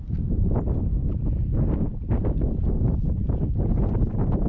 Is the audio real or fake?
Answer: real